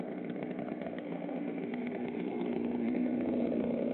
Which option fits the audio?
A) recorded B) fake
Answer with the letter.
B